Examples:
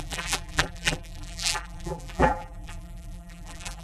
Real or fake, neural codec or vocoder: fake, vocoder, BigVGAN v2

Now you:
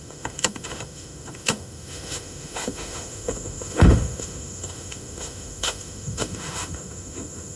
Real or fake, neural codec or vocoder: fake, autoencoder, DAC-VAE